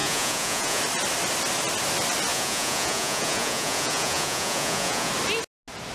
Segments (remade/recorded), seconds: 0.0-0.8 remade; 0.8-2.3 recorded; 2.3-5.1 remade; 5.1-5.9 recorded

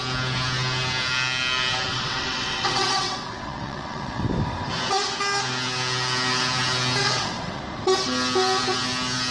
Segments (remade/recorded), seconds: 0.0-1.9 recorded; 1.9-4.2 remade; 4.2-7.0 recorded; 7.0-7.6 remade; 7.6-9.3 recorded

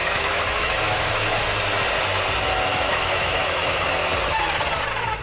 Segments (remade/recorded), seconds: 0.0-1.4 remade; 1.4-2.7 recorded; 2.7-3.9 remade; 3.9-5.2 recorded